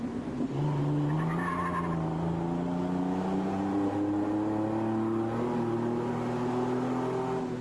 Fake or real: real